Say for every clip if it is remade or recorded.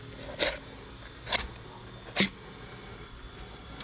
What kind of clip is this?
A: recorded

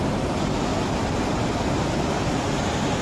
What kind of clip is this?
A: recorded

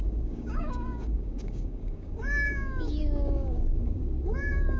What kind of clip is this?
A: remade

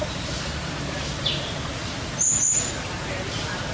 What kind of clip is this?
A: recorded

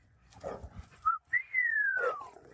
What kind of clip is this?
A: remade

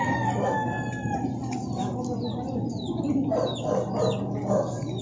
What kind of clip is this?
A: recorded